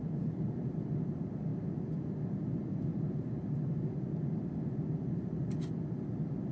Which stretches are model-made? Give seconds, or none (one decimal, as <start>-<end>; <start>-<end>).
none